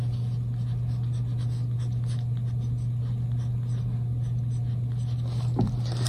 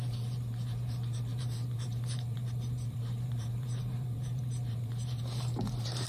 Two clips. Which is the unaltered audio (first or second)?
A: first